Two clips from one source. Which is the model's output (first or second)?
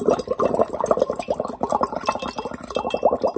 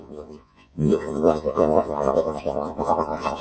second